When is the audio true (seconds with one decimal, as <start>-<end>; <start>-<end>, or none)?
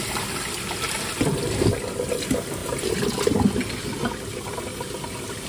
0.0-5.5